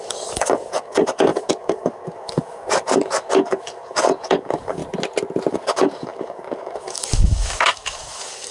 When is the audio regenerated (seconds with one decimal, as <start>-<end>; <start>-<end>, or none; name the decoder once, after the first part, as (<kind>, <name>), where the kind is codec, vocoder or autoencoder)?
0.0-4.8 (codec, DAC); 5.5-8.5